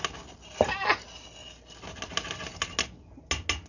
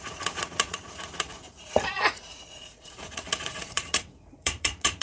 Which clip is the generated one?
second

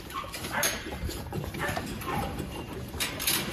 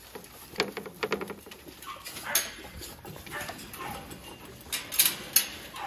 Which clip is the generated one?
first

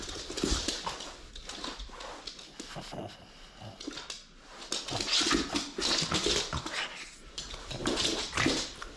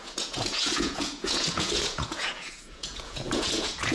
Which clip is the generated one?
second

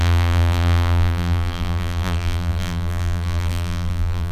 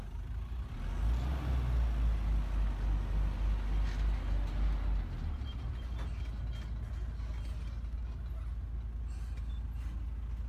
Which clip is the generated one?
first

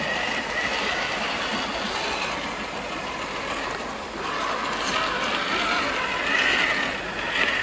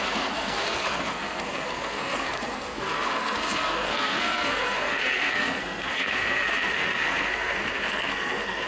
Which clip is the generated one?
second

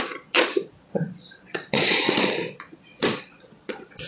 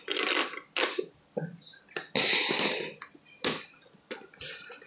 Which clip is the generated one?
first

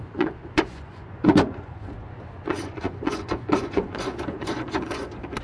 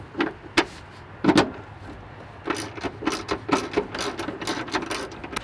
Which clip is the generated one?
first